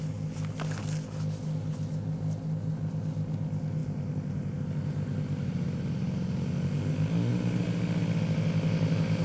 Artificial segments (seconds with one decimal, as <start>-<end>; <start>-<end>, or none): none